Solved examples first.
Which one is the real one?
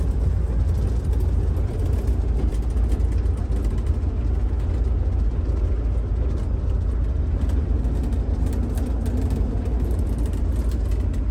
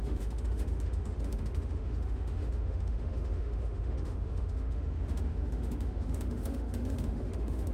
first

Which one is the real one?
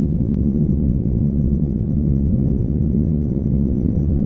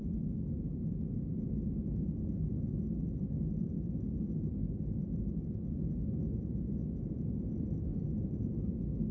second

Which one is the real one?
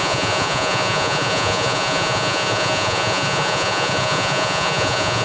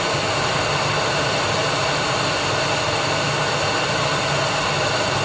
second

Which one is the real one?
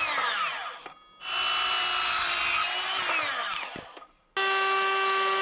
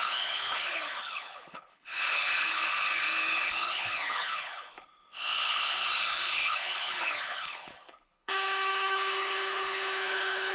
first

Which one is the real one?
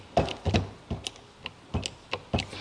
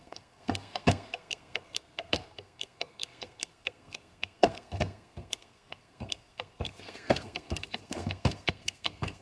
first